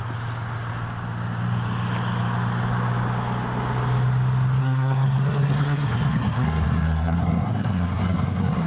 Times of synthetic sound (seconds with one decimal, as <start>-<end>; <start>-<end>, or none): 4.6-8.7